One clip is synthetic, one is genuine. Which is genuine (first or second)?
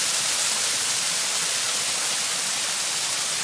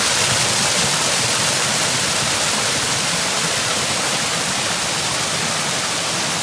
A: first